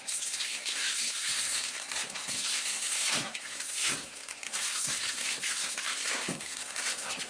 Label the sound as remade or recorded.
remade